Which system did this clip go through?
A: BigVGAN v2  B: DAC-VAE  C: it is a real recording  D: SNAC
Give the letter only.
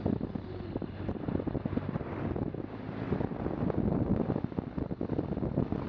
C